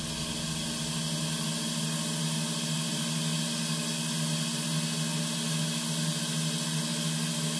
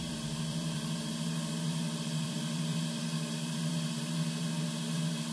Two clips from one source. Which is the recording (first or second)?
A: first